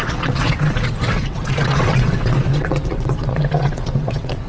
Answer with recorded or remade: remade